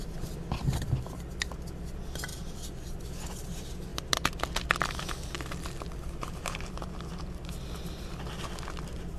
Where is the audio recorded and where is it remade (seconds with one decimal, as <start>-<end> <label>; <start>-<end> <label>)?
0.0-0.9 remade; 0.9-2.3 recorded; 2.3-3.0 remade; 3.0-9.2 recorded